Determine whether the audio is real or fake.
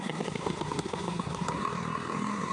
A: fake